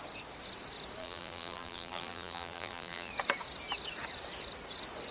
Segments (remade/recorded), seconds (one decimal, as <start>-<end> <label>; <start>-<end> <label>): 0.0-1.0 recorded; 1.0-3.1 remade; 3.1-5.1 recorded